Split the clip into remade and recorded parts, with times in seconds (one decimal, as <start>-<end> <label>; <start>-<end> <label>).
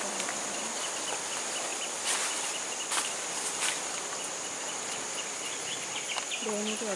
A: 0.0-1.7 recorded; 1.7-5.7 remade; 5.7-7.0 recorded